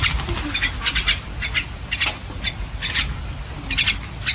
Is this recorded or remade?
recorded